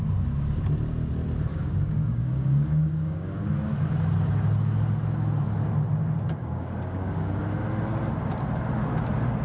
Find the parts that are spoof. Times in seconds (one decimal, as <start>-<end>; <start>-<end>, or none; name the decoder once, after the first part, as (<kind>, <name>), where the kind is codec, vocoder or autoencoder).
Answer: 1.5-3.5 (codec, DAC); 6.4-7.4